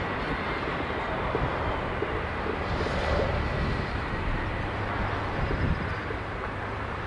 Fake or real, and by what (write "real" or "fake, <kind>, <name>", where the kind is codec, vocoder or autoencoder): real